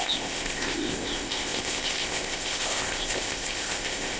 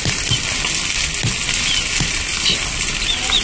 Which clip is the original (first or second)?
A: second